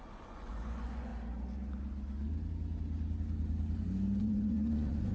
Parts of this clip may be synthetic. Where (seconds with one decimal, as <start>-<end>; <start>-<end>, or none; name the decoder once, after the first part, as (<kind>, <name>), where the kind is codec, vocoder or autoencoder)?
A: 0.0-1.1 (vocoder, Vocos); 4.2-5.1